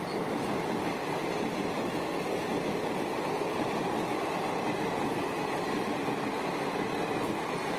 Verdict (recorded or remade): recorded